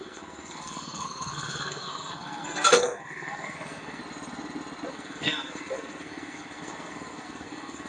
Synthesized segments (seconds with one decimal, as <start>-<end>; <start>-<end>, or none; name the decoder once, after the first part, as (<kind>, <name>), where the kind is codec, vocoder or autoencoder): 0.0-4.0 (codec, SNAC); 4.9-7.9